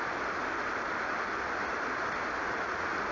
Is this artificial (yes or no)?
no